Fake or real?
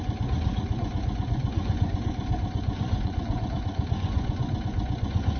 fake